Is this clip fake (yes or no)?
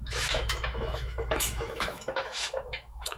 yes